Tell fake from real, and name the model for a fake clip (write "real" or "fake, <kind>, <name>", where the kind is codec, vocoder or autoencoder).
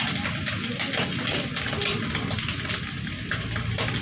real